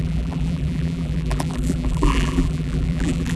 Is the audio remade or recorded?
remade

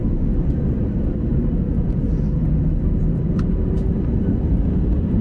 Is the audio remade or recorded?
remade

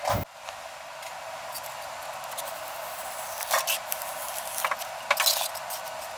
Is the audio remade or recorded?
recorded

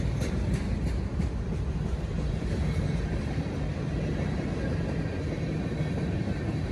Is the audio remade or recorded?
remade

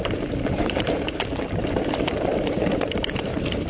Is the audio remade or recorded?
remade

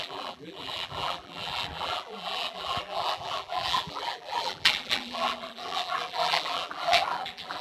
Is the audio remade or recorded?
remade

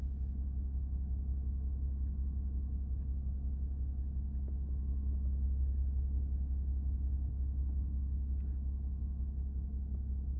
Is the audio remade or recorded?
recorded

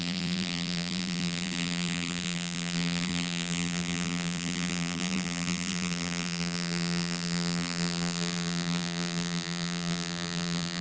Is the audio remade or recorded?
remade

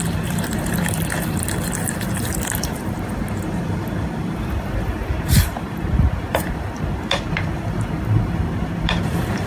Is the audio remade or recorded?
remade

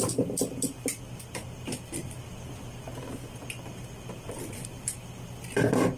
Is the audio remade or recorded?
remade